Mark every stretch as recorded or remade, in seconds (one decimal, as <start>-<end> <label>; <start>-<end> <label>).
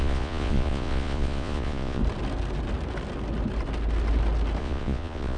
0.0-2.0 remade; 2.0-4.6 recorded; 4.6-5.4 remade